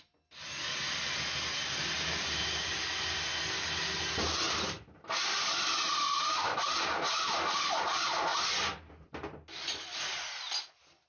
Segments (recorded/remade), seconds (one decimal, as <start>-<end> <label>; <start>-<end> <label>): 0.0-11.1 recorded